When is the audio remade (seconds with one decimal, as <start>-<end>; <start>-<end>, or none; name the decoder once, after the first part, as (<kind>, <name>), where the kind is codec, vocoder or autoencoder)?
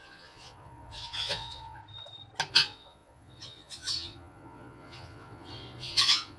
0.0-1.8 (vocoder, Vocos); 2.5-6.4